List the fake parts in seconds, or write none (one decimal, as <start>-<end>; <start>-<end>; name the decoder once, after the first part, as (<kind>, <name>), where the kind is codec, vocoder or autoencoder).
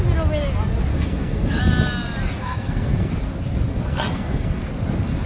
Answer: 0.9-1.6 (codec, SNAC); 2.4-3.1; 3.7-4.6